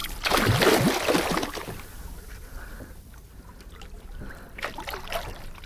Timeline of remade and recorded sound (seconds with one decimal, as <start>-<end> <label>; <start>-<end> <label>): 0.0-5.7 recorded